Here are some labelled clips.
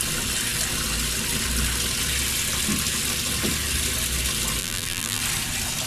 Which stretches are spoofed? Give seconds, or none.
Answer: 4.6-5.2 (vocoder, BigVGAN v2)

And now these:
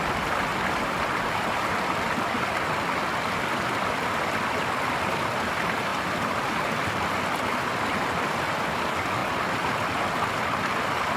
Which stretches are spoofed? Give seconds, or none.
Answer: 5.9-6.4 (vocoder, BigVGAN v2)